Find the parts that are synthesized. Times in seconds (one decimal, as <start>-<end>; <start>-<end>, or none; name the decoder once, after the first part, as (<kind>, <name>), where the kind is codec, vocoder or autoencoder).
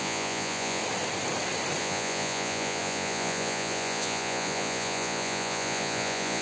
0.0-0.8 (vocoder, Vocos); 1.8-6.4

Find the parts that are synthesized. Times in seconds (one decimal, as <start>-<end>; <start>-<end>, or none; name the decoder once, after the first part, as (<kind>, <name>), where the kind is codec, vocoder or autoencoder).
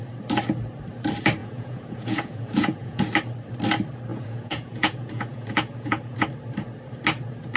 1.4-3.0 (vocoder, Vocos); 4.1-6.2